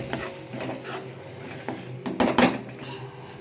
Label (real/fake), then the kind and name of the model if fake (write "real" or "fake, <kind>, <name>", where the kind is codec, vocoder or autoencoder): real